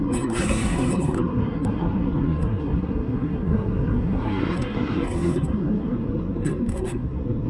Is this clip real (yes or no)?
no